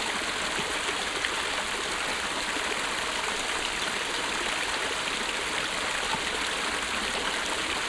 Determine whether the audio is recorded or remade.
recorded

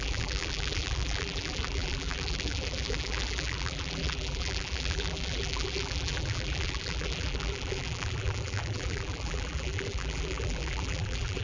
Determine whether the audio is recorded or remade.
remade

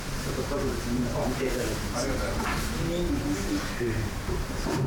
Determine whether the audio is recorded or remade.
remade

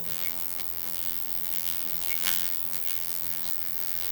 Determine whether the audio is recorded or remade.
remade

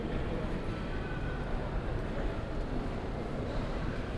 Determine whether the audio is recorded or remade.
remade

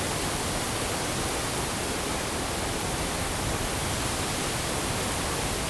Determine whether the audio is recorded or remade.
recorded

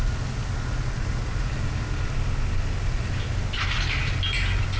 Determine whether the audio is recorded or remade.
recorded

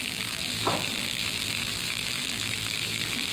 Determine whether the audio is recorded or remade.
remade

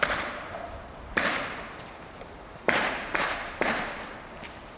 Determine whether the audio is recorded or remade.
remade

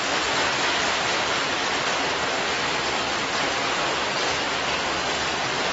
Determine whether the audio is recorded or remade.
recorded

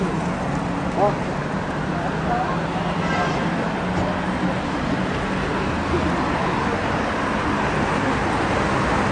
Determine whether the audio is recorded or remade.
recorded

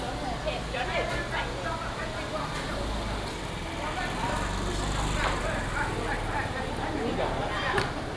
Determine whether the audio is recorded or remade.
recorded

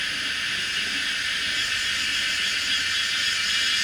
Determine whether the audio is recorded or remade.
recorded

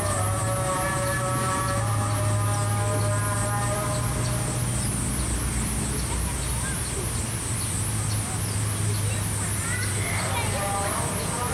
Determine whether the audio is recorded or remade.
recorded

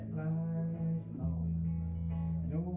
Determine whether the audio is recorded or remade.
recorded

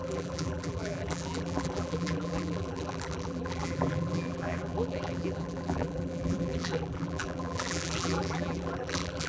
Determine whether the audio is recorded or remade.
remade